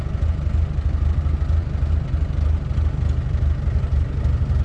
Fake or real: real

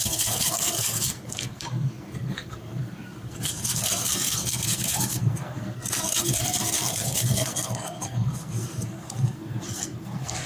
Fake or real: fake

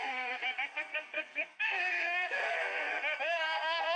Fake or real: fake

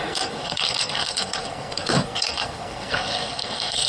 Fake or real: fake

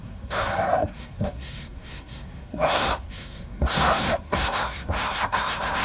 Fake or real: fake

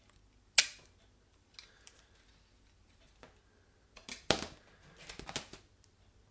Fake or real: real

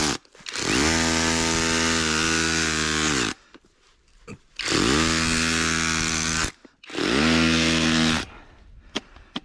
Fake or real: real